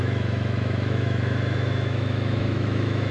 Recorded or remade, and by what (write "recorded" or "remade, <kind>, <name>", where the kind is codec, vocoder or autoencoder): remade, autoencoder, DAC-VAE